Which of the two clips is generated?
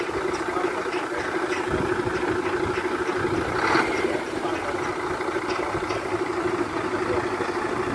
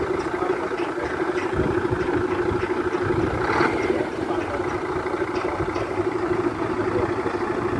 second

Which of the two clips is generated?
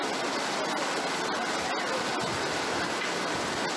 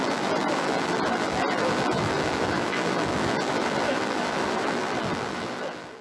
second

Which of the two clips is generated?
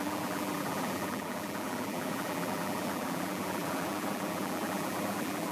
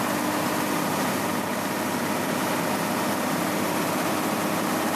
first